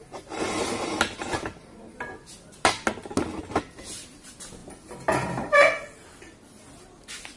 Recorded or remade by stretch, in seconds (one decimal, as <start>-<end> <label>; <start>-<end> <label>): 0.0-7.4 recorded